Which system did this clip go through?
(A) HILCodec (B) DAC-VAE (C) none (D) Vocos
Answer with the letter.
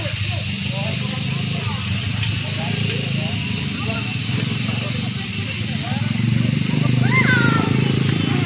C